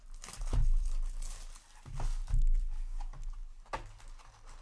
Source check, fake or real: real